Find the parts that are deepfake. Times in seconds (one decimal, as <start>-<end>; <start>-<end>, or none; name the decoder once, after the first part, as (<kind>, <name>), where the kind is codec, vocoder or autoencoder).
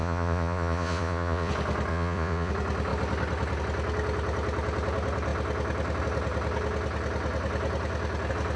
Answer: 0.0-1.5 (vocoder, Vocos); 1.9-2.5